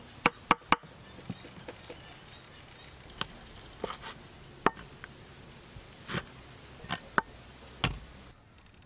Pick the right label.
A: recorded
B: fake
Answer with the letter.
A